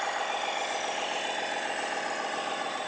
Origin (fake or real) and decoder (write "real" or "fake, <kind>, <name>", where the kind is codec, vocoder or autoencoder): real